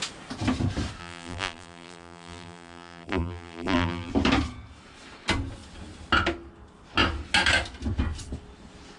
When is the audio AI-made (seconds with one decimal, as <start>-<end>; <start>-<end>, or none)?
1.0-4.1